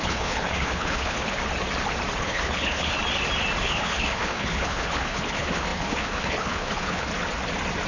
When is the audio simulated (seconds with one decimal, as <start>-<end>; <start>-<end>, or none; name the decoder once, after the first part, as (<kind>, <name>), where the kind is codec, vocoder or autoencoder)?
0.0-1.4 (codec, HILCodec); 2.2-2.9; 3.6-7.1